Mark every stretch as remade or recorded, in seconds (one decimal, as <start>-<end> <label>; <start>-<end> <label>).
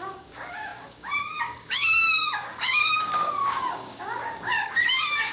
0.0-5.3 remade